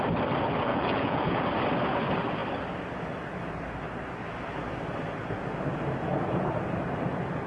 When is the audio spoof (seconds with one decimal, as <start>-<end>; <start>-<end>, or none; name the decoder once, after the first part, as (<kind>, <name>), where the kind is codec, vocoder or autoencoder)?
0.7-1.4 (vocoder, Vocos)